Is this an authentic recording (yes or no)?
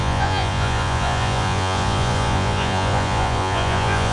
no